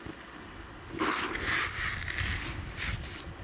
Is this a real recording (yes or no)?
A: yes